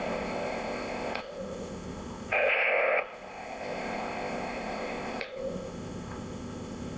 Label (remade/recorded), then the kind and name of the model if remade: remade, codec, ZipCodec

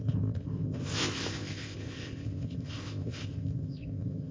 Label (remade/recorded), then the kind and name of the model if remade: remade, codec, ZipCodec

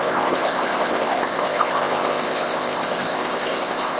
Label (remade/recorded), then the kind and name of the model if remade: remade, codec, ZipCodec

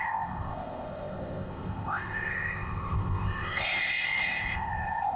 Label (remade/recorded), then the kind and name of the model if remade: remade, codec, ZipCodec